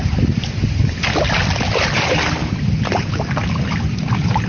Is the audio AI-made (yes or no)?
no